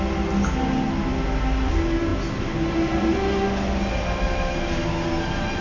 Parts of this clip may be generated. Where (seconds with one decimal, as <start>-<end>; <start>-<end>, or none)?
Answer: none